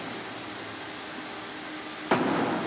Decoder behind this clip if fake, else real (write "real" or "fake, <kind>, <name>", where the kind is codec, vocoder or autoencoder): real